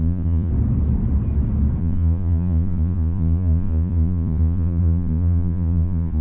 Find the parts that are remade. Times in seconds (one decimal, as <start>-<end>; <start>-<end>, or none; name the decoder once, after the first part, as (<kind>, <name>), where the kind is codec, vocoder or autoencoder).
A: 0.0-0.5 (vocoder, Vocos); 1.8-6.2